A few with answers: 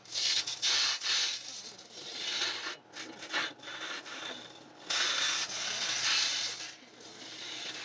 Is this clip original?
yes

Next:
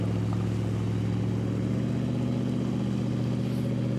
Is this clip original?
yes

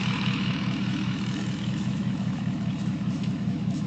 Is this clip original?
no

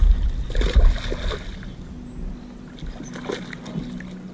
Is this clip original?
yes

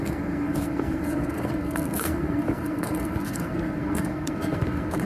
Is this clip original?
no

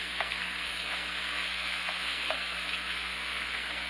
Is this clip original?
no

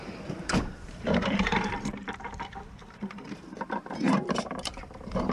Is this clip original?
no